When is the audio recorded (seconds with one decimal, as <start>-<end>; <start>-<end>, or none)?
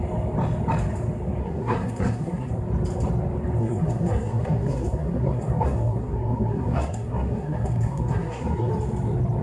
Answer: 0.0-1.4; 2.5-3.6; 8.7-9.4